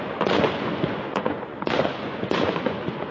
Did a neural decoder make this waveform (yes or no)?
yes